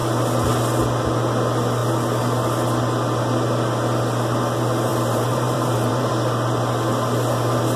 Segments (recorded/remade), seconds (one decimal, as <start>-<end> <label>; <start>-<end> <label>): 0.0-4.9 recorded; 4.9-6.1 remade; 6.1-7.8 recorded